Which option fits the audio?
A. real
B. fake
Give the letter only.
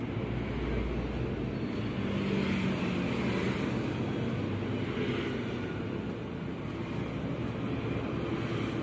A